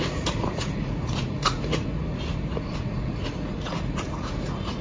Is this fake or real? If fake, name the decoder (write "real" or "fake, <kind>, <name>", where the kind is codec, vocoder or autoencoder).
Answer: fake, vocoder, Vocos